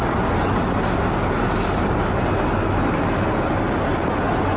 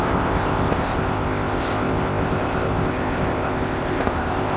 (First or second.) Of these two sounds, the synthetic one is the second